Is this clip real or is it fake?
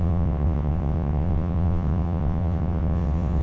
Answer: fake